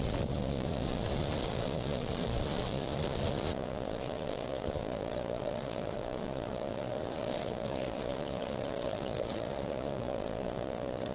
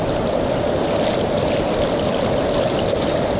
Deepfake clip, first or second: first